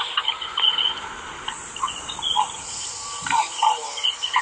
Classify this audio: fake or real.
real